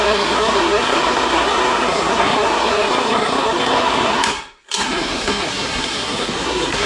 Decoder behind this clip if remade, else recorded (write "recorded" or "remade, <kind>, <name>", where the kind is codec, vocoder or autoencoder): remade, codec, SNAC